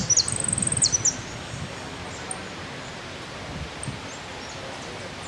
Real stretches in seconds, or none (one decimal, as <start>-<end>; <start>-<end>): 0.0-1.3; 2.0-5.3